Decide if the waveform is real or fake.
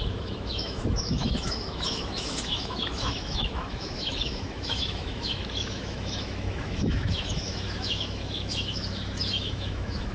fake